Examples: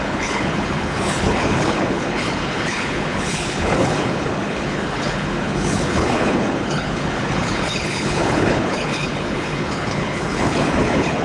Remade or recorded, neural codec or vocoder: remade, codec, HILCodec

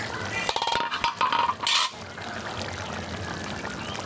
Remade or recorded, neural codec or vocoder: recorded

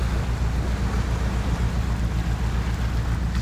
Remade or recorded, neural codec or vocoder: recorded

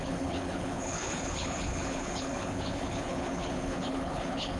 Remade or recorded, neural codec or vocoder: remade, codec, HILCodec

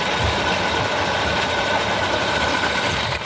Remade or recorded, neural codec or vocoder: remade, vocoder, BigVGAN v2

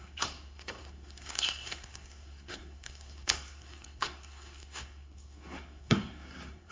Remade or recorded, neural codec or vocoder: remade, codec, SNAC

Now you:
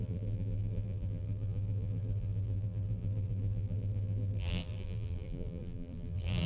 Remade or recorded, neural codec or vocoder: remade, vocoder, BigVGAN v2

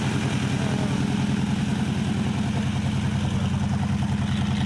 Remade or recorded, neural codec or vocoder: recorded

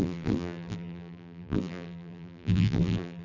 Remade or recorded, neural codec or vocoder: remade, vocoder, BigVGAN v2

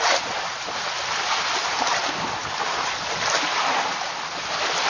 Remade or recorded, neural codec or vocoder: recorded